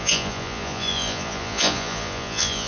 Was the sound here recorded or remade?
remade